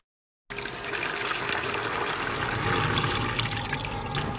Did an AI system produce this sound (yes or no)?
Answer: no